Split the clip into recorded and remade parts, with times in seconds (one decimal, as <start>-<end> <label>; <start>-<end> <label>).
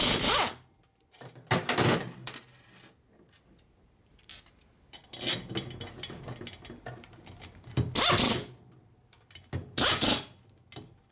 0.0-11.1 recorded